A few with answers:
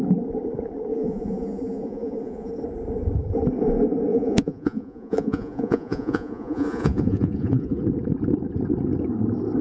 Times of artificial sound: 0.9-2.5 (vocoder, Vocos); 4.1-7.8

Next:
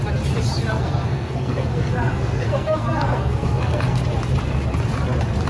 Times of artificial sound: 0.7-4.0 (codec, SNAC)

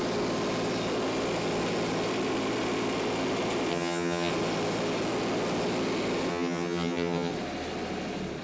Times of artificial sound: 3.7-4.3 (vocoder, HiFi-GAN); 6.3-7.3

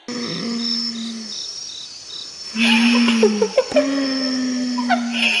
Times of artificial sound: none

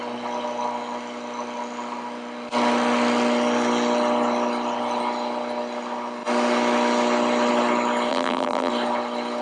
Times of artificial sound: 8.1-8.7 (vocoder, BigVGAN v2)

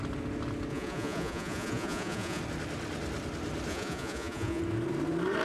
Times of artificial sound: 0.7-2.4 (vocoder, Vocos); 3.7-4.6

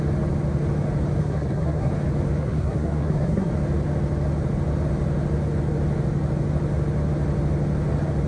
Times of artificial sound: 1.2-1.9 (codec, SNAC); 2.4-3.5

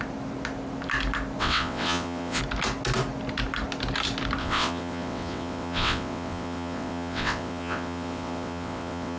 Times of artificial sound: 1.4-2.4 (vocoder, WaveNeXt); 4.4-9.2